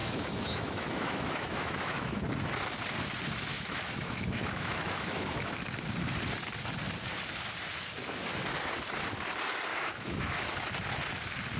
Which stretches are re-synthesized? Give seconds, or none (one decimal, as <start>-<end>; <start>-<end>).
0.0-2.2; 3.5-5.5; 9.7-10.4